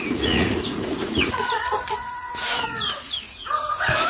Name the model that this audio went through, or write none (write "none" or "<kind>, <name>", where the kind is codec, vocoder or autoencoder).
vocoder, Vocos